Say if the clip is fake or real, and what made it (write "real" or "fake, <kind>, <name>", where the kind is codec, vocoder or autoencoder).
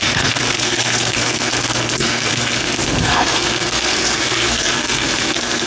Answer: fake, codec, SNAC